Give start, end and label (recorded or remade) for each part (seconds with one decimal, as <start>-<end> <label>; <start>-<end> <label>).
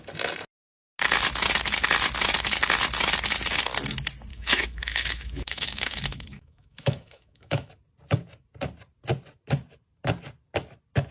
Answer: 0.0-4.3 recorded; 4.3-7.7 remade; 7.7-11.1 recorded